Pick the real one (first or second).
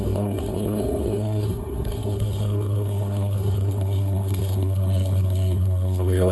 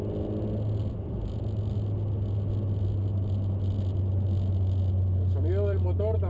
second